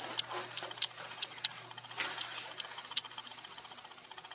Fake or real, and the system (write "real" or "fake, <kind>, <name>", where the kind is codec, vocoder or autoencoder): real